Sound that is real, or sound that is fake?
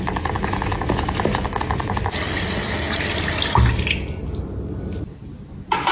real